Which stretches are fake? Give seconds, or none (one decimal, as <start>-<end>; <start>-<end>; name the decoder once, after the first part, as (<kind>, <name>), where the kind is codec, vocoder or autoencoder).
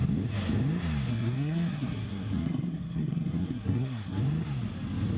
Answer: 1.1-4.2 (codec, SNAC)